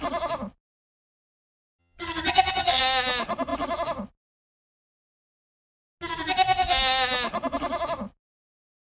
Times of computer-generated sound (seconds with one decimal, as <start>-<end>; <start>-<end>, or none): 1.8-2.8